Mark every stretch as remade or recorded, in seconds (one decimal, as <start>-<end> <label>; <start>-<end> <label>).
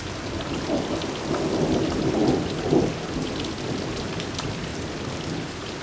0.0-5.8 recorded